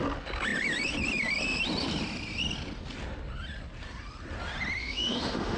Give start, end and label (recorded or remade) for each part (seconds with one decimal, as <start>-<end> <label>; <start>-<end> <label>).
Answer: 0.0-4.8 recorded; 4.8-5.6 remade